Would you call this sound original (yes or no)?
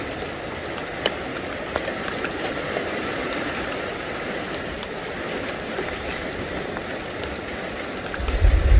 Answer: yes